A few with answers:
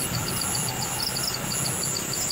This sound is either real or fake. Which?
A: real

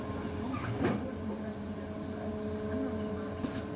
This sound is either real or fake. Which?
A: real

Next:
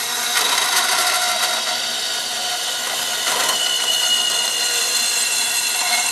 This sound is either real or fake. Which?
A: fake